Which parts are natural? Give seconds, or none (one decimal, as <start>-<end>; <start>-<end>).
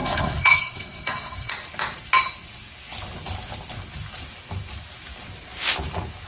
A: 1.5-6.3